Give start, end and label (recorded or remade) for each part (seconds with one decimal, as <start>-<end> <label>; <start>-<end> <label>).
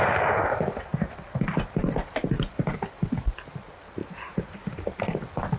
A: 0.0-4.0 recorded; 4.0-5.0 remade; 5.0-5.6 recorded